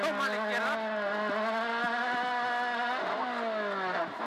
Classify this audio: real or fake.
real